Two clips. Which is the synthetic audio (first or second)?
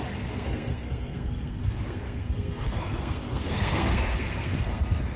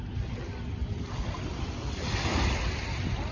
first